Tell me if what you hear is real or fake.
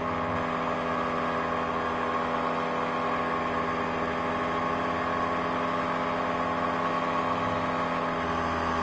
real